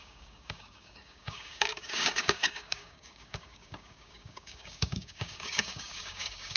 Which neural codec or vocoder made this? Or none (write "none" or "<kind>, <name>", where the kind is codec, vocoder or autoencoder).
codec, DAC